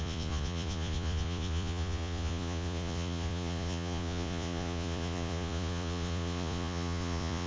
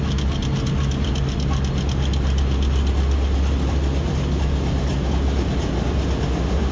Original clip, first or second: second